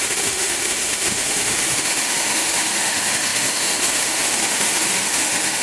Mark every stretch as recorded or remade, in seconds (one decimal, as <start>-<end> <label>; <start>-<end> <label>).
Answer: 0.0-5.6 remade